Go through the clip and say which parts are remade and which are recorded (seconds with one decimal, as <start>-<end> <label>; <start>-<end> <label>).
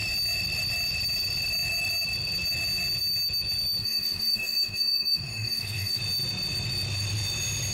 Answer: 0.0-3.8 recorded; 3.8-6.0 remade; 6.0-7.7 recorded